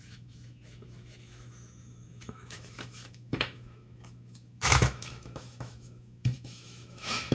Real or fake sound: fake